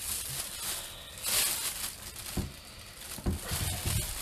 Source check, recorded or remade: recorded